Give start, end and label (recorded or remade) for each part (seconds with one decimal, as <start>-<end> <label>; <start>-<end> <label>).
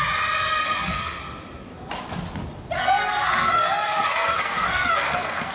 0.0-0.6 recorded; 0.6-1.2 remade; 1.2-2.8 recorded; 2.8-5.5 remade